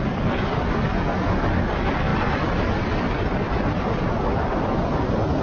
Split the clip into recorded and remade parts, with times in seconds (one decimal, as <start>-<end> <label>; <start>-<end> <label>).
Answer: 0.0-5.4 recorded